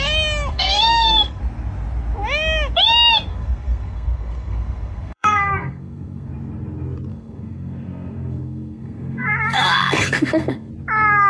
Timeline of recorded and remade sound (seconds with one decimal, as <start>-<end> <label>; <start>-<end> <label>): 0.0-0.5 recorded; 0.5-1.4 remade; 1.4-3.3 recorded; 3.3-6.3 remade; 6.3-7.1 recorded; 7.1-10.7 remade; 10.7-11.3 recorded